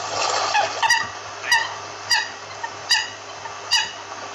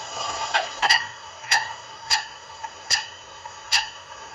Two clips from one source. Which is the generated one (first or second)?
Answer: second